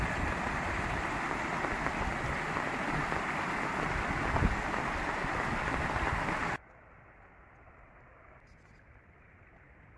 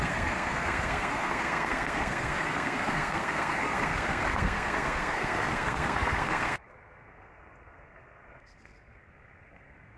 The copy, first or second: second